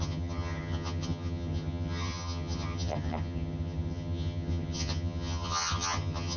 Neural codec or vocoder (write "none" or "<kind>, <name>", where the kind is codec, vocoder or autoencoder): vocoder, HiFi-GAN